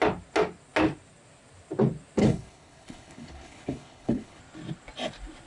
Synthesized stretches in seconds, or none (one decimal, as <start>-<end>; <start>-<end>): 2.2-4.4